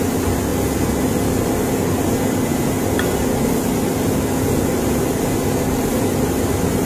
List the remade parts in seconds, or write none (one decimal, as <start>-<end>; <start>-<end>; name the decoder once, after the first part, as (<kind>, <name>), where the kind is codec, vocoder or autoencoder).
none